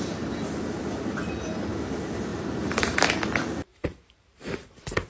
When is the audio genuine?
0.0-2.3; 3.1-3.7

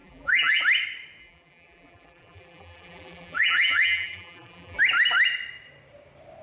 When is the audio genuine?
0.6-1.2; 4.8-6.4

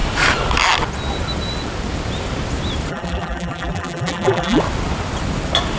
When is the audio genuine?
0.0-2.9; 4.6-5.8

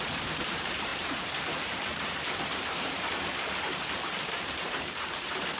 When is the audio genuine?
none